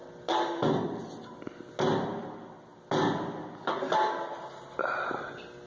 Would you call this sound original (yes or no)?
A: yes